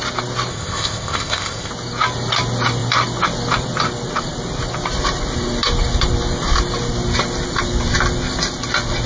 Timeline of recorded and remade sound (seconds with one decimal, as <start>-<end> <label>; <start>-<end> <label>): 0.0-0.5 recorded; 0.5-1.7 remade; 1.7-9.1 recorded